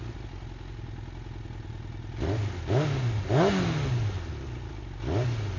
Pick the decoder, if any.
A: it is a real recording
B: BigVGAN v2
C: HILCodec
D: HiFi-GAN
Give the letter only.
A